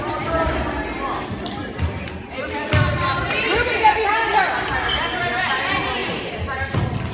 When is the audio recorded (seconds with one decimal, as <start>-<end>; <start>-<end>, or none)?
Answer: 0.0-7.1

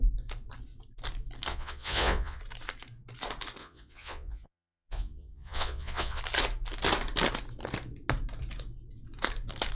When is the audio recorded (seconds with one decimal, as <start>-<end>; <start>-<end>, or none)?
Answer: 0.0-1.5; 2.4-3.6; 6.2-9.8

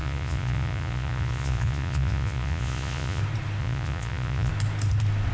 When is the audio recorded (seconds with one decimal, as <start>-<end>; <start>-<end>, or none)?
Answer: 3.2-3.6; 4.5-5.3

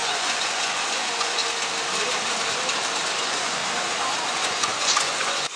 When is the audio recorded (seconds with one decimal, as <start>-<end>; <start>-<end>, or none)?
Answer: 1.4-3.2; 3.6-4.2

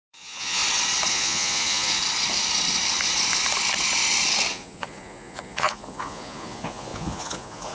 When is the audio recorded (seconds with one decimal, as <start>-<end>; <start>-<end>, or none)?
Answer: 0.6-1.1; 2.0-4.5

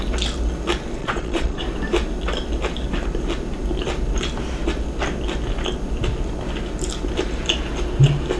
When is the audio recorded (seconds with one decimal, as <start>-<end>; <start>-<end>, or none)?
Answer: 0.0-1.0; 1.6-8.4

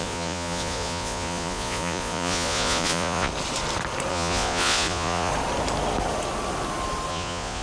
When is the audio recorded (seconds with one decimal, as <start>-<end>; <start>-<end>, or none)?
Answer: 3.3-4.1; 5.3-7.1

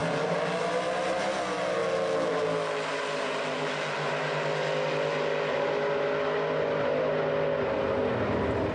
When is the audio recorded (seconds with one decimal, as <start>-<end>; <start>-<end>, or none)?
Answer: 0.0-8.7